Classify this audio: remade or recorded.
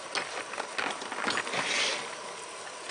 recorded